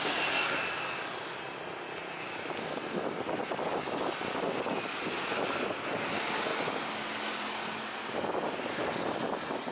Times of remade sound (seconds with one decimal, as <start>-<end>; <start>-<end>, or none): none

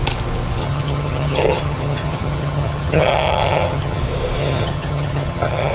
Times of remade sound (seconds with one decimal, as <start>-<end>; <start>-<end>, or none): 0.6-4.0; 4.4-5.7